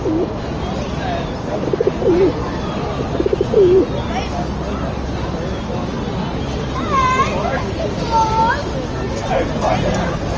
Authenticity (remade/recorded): recorded